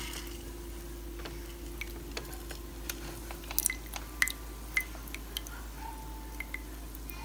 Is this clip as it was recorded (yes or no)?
yes